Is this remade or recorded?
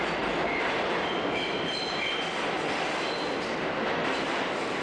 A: recorded